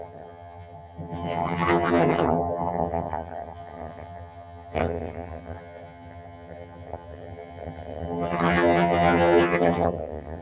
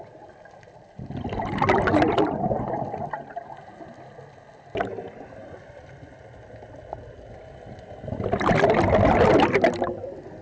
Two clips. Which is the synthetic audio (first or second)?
first